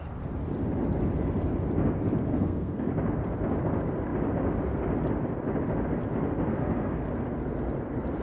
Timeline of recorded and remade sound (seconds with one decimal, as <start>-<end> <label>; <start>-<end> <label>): 0.0-2.3 recorded; 2.3-2.9 remade; 2.9-6.5 recorded; 6.5-7.1 remade; 7.1-8.2 recorded